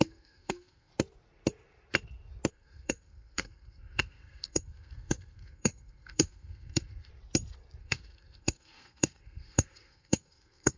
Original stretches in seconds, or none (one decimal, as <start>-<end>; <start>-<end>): 0.9-2.5; 7.1-7.8